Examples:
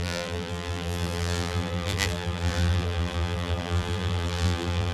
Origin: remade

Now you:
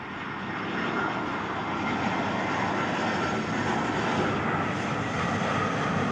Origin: recorded